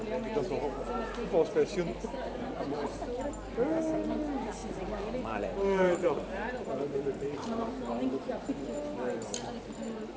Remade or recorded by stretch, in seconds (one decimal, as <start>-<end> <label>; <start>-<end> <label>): 0.0-1.9 recorded; 1.9-3.3 remade; 3.3-4.6 recorded; 4.6-7.7 remade; 7.7-10.2 recorded